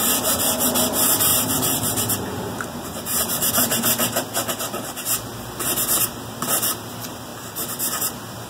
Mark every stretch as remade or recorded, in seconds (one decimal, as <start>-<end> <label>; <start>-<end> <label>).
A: 0.0-1.3 recorded; 1.3-3.5 remade; 3.5-8.5 recorded